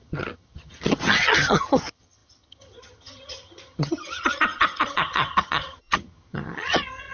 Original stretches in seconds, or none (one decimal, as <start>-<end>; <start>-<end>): none